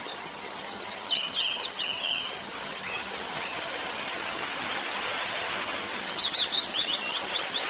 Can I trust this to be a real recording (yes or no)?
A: no